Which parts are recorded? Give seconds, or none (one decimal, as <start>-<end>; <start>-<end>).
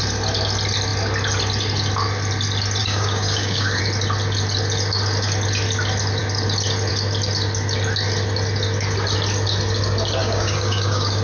0.0-2.8; 3.8-10.2